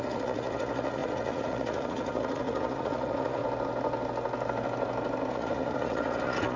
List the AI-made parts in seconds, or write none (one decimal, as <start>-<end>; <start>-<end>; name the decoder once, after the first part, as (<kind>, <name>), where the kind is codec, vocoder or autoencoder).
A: 0.0-3.4 (vocoder, Vocos); 5.3-6.6